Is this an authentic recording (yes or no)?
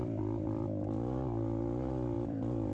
no